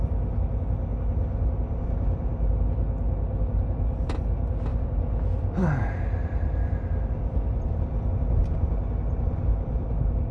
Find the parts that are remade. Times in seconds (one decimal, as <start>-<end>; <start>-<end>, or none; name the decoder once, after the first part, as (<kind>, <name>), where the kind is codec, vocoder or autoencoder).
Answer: 4.7-8.1 (vocoder, BigVGAN v2)